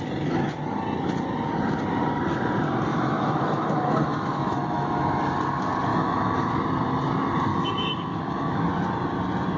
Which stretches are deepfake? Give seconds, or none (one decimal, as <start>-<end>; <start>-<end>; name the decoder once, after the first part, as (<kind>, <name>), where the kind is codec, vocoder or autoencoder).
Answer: 2.9-5.2 (autoencoder, DAC-VAE); 5.9-6.6; 7.5-8.7